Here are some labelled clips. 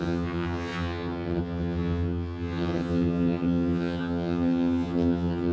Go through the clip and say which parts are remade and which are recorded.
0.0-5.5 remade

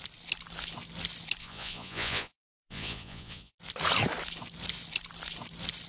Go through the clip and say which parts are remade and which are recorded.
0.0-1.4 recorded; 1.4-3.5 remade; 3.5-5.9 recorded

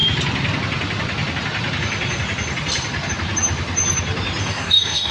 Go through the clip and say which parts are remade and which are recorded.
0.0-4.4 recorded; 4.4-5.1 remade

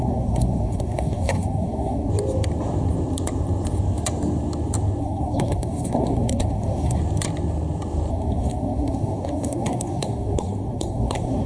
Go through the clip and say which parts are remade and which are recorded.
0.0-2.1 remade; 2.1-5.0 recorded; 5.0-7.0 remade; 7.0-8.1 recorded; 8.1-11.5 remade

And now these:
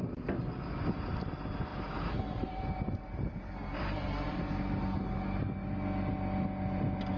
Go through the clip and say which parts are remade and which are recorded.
0.0-1.7 recorded; 1.7-4.5 remade; 4.5-7.2 recorded

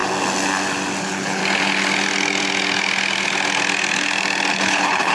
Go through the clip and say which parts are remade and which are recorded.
0.0-1.0 recorded; 1.0-1.4 remade; 1.4-4.5 recorded; 4.5-5.1 remade

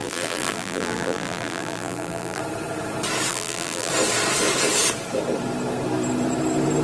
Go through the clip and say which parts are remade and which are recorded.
0.0-2.4 remade; 2.4-3.3 recorded; 3.3-3.9 remade; 3.9-6.8 recorded